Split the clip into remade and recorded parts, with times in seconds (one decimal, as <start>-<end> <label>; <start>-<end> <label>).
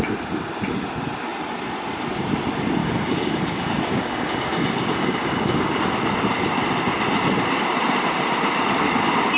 0.0-2.8 recorded; 2.8-5.8 remade; 5.8-9.4 recorded